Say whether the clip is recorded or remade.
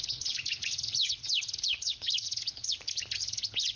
remade